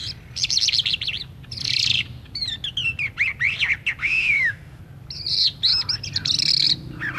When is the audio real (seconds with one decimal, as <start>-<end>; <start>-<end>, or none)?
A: 0.0-4.0; 4.8-7.2